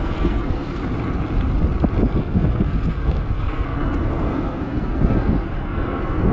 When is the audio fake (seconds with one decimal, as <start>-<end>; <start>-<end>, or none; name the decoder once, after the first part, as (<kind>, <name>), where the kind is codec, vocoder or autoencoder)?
0.0-0.8 (codec, SNAC); 2.2-6.3